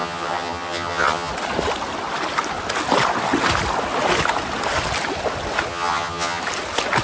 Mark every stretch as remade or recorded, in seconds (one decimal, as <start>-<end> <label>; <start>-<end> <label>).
0.0-1.3 remade; 1.3-5.7 recorded; 5.7-6.4 remade; 6.4-7.0 recorded